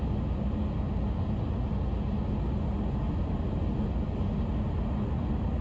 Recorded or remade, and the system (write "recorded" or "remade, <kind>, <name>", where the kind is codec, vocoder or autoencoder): recorded